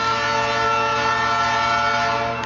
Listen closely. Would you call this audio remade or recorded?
recorded